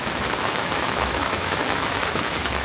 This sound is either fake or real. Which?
fake